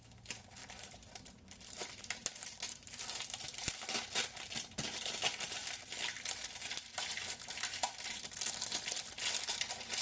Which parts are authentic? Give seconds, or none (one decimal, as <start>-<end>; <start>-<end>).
0.0-0.6; 3.7-10.0